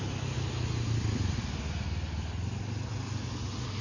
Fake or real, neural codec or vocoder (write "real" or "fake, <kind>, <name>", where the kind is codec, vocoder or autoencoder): real